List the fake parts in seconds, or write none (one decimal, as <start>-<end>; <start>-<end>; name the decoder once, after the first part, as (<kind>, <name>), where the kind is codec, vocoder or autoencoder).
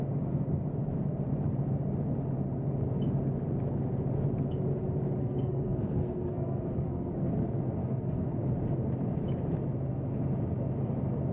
5.2-7.3 (codec, SNAC); 7.8-8.3